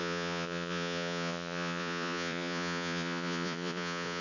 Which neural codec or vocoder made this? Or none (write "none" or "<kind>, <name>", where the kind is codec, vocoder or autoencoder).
vocoder, Vocos